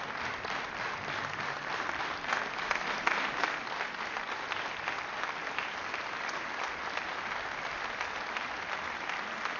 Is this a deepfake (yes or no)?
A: no